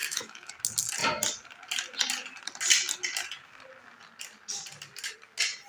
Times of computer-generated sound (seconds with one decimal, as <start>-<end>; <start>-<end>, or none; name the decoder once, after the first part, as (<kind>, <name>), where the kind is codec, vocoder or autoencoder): 0.0-0.5 (autoencoder, DAC-VAE)